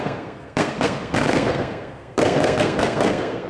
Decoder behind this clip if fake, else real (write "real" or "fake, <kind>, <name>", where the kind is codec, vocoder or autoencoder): fake, codec, SNAC